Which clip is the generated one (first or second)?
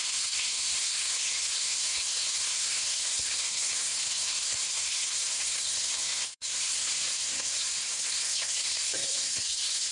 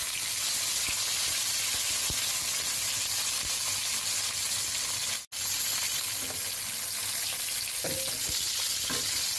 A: first